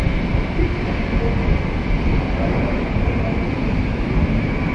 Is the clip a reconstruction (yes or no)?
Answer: no